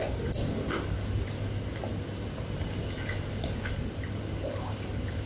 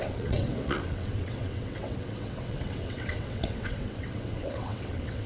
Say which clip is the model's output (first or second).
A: second